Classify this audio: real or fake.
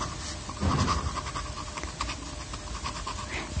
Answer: real